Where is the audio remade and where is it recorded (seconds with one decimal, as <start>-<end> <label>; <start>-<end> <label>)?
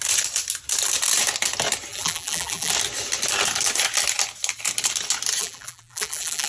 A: 0.0-1.9 recorded; 1.9-2.7 remade; 2.7-5.4 recorded; 5.4-6.5 remade